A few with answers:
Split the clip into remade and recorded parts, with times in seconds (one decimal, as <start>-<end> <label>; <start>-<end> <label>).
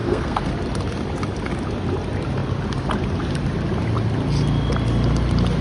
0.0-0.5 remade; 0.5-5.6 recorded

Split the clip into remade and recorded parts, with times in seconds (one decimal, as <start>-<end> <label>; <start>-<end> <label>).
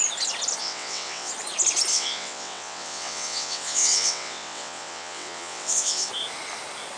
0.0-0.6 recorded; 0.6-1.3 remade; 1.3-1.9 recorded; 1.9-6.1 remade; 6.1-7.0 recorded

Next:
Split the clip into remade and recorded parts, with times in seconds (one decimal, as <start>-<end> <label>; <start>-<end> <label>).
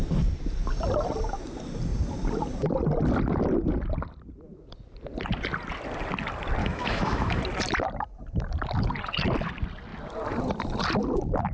0.0-6.6 recorded; 6.6-7.4 remade; 7.4-11.5 recorded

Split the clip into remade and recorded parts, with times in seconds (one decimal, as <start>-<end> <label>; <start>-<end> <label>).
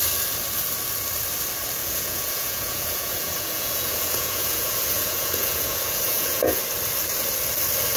0.0-1.8 recorded; 1.8-6.6 remade; 6.6-8.0 recorded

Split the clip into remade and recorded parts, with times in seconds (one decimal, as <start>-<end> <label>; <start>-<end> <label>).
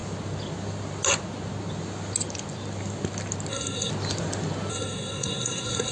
0.0-3.5 recorded; 3.5-3.9 remade; 3.9-4.7 recorded; 4.7-5.9 remade